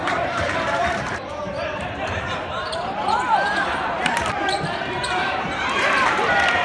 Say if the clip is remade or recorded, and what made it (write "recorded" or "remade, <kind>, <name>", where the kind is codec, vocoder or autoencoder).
remade, vocoder, BigVGAN v2